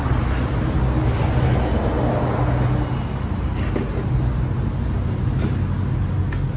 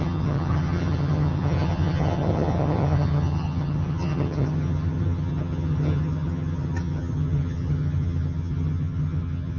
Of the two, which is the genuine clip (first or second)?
first